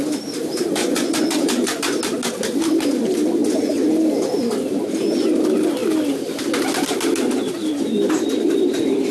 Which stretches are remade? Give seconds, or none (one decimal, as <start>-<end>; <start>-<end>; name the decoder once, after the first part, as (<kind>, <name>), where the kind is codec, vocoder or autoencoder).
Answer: 0.8-1.8 (vocoder, Vocos)